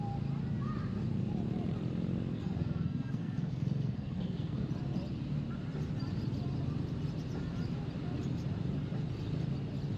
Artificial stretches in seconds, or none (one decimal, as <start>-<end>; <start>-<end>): 2.3-4.7